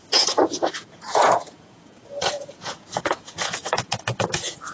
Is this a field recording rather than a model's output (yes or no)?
no